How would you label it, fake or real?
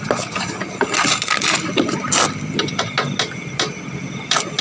real